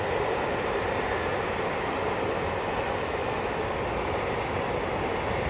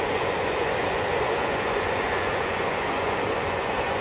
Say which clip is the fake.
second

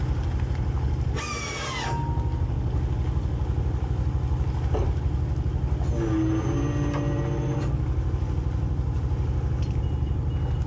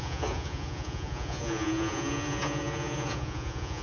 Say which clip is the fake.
second